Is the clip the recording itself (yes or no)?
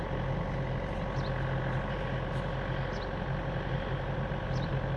yes